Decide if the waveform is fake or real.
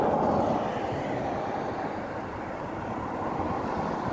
real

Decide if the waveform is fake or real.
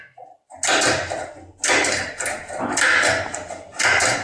real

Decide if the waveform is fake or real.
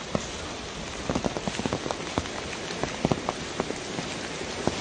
real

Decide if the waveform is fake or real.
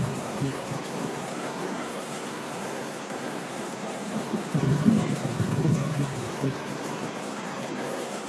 fake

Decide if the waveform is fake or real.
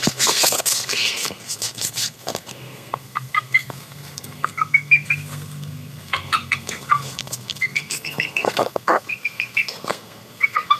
fake